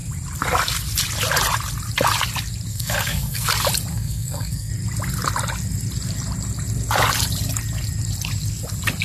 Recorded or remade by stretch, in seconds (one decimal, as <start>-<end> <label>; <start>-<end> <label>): 0.0-2.7 recorded; 2.7-3.5 remade; 3.5-3.9 recorded; 3.9-4.7 remade; 4.7-9.0 recorded